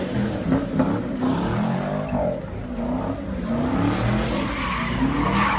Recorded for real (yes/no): yes